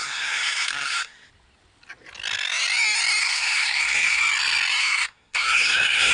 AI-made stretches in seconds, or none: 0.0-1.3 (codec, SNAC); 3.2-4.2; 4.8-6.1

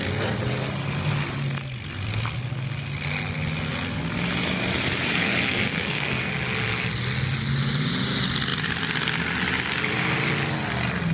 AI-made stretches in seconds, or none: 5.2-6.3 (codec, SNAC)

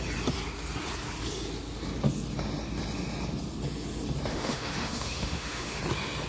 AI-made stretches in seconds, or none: 4.3-5.8 (autoencoder, DAC-VAE)

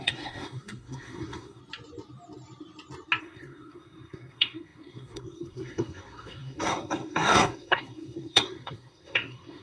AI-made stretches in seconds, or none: 0.0-1.6 (codec, SNAC); 3.2-9.6

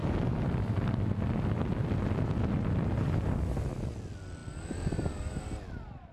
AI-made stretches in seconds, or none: none

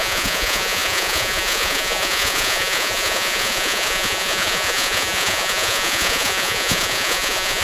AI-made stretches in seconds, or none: 0.0-7.6 (vocoder, Vocos)

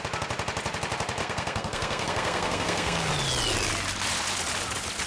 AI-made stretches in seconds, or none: 1.2-3.1 (codec, SNAC)